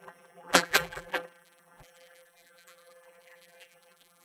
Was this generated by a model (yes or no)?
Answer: yes